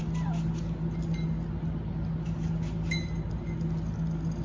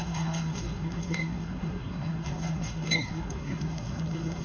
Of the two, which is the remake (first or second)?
second